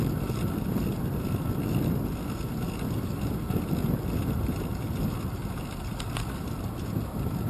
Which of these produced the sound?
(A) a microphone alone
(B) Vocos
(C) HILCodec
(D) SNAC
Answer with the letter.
A